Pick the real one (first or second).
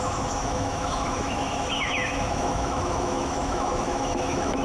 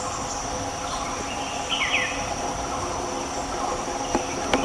second